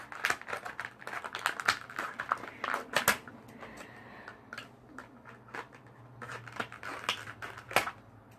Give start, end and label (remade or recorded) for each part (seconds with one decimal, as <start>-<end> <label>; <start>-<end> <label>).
0.0-8.4 recorded